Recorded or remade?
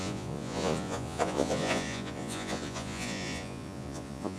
remade